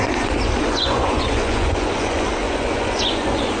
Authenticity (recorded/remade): remade